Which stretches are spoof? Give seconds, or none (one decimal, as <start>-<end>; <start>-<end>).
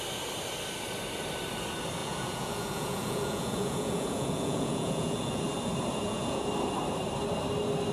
2.0-5.4; 5.9-6.5